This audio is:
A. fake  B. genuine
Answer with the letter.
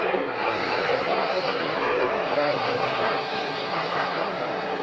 A